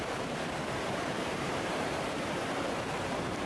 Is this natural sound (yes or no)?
no